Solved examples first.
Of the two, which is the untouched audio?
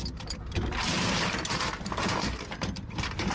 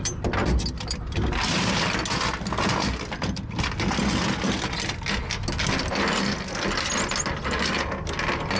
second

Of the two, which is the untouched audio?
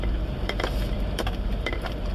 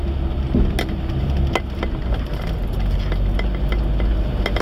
second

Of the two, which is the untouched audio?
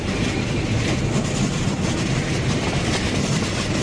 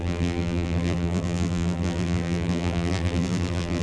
first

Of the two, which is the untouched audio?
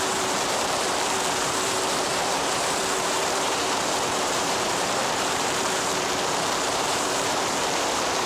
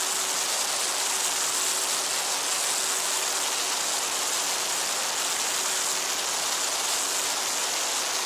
second